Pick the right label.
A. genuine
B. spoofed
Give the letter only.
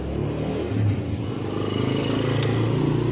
A